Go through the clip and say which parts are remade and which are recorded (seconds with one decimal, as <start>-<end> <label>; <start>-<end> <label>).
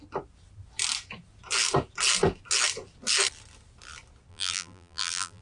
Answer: 0.0-4.3 recorded; 4.3-5.4 remade